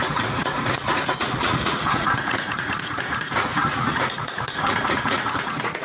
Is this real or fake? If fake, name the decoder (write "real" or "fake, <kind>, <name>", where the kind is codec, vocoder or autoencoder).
fake, vocoder, Vocos